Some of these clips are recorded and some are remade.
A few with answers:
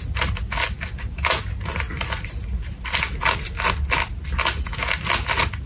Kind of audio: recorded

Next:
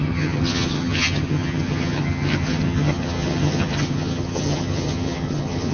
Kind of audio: remade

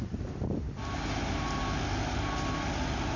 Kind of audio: recorded